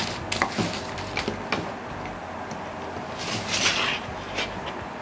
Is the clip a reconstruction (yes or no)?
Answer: no